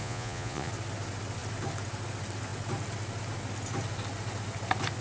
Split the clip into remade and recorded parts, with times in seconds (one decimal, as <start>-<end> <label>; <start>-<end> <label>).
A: 0.0-0.7 remade; 0.7-5.0 recorded